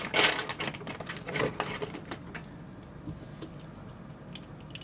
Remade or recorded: recorded